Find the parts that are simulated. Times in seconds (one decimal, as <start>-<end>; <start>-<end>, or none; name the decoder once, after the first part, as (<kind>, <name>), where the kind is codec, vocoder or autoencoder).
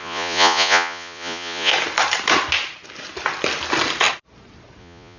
0.0-1.7 (vocoder, Vocos); 4.8-5.2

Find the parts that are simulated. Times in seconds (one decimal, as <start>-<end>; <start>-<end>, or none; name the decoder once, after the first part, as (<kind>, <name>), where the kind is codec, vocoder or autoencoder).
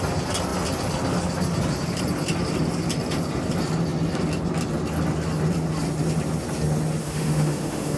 7.0-8.0 (autoencoder, DAC-VAE)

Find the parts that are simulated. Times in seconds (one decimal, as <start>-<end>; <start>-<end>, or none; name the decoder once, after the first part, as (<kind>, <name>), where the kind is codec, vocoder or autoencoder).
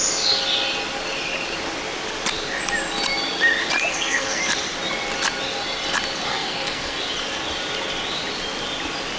3.9-4.4 (codec, SNAC); 6.3-7.0